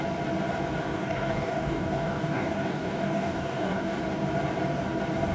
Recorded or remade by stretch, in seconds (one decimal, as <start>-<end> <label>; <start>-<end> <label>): 0.0-0.8 recorded; 0.8-4.0 remade; 4.0-5.3 recorded